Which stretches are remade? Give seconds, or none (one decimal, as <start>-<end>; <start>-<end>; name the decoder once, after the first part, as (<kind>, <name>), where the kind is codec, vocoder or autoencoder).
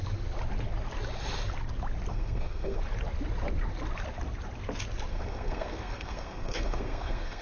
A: 2.1-2.8 (codec, SNAC); 5.1-7.4